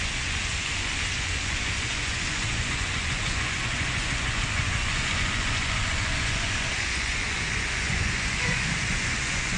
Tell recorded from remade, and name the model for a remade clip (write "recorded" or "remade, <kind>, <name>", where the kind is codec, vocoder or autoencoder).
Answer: remade, vocoder, Vocos